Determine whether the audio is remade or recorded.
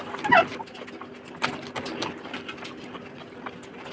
recorded